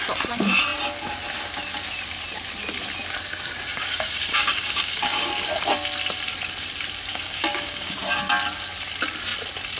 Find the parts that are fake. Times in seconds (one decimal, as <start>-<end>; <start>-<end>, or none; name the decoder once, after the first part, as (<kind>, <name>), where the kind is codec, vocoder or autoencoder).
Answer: 3.7-5.3 (codec, DAC); 7.1-8.0